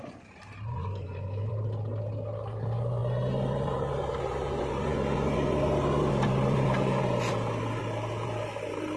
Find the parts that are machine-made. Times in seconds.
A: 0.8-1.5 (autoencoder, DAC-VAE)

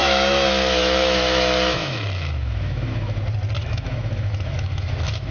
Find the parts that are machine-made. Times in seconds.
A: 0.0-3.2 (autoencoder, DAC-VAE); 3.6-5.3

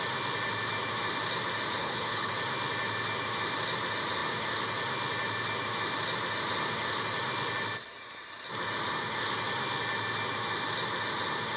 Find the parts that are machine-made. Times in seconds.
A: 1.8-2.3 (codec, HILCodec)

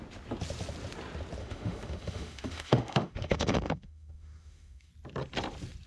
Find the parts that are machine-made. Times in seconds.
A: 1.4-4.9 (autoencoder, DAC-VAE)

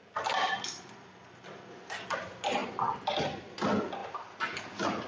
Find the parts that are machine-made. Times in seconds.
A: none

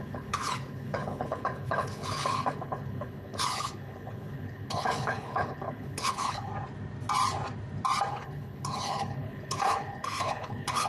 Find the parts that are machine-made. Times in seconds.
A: 0.0-6.5 (codec, HILCodec); 8.1-10.9

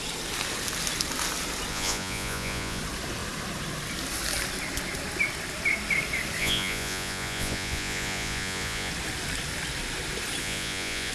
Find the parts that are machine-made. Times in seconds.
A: 1.7-2.8 (vocoder, Vocos); 6.4-8.9; 10.4-11.1

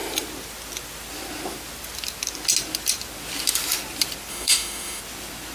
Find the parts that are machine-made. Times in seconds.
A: 4.3-5.0 (autoencoder, DAC-VAE)